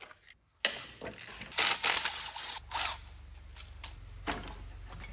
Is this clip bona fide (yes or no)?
yes